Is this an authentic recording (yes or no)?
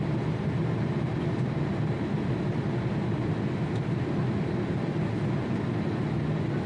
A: yes